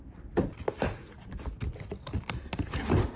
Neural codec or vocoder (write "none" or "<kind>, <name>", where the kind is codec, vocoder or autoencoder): none